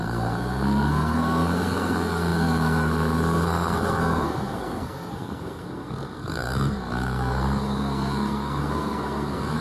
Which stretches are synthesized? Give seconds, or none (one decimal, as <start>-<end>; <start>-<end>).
0.0-9.6